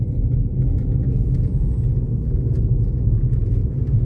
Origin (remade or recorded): recorded